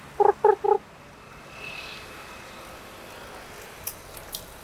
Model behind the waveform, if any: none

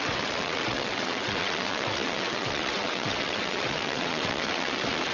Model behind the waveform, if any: vocoder, WaveNeXt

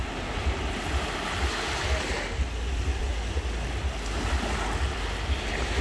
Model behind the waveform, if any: none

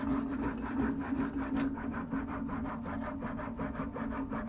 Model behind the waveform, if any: none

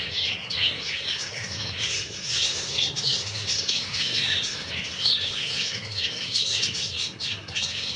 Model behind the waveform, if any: codec, SNAC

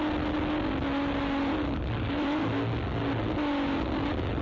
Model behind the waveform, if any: none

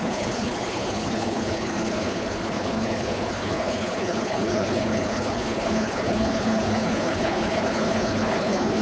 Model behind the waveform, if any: codec, HILCodec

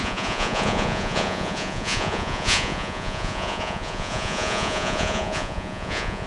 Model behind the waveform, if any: vocoder, Vocos